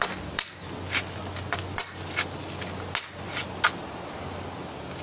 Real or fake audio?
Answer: real